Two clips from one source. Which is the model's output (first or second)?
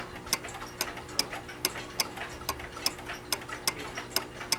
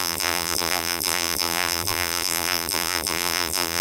second